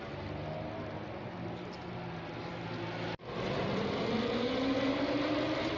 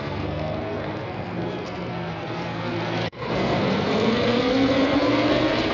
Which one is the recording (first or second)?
first